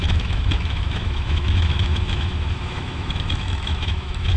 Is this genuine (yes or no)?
no